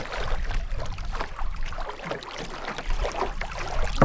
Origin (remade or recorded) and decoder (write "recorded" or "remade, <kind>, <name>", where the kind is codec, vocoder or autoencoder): recorded